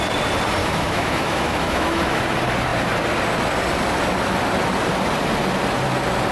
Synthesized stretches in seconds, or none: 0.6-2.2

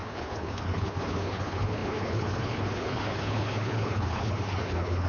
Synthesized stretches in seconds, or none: 0.0-5.1

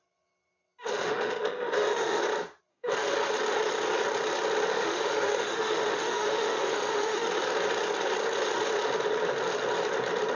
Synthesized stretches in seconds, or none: 0.8-2.2; 2.7-3.3; 4.7-7.3

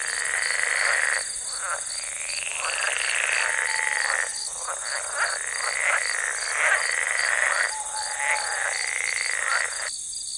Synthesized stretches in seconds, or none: none

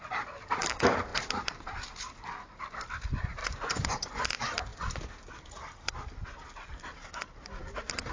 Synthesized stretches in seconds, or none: 3.4-4.2

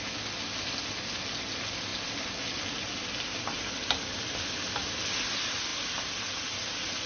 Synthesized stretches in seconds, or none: none

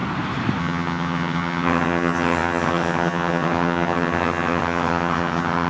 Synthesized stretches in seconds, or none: 0.6-5.7